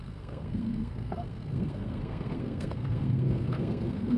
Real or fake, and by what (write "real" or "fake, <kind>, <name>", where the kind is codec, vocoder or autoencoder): fake, codec, SNAC